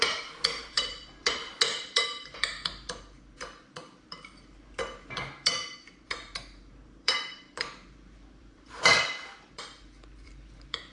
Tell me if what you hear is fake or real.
fake